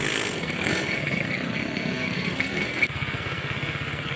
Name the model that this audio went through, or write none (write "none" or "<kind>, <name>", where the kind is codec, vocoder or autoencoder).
codec, SNAC